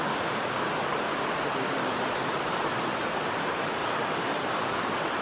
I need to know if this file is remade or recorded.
recorded